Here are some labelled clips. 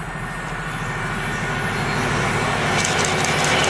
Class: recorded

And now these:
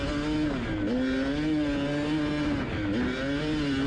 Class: recorded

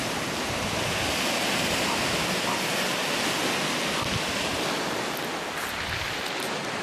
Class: recorded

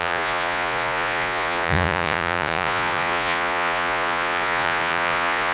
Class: remade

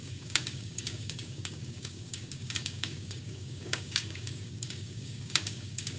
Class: remade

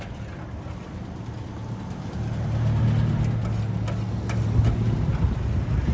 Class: recorded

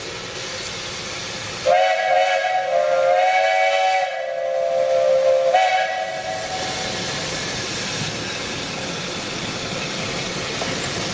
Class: recorded